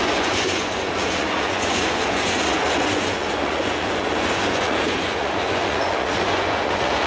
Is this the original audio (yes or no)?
no